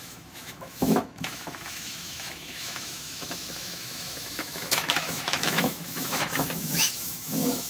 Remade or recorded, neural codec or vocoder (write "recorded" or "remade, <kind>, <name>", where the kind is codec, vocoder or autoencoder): remade, autoencoder, DAC-VAE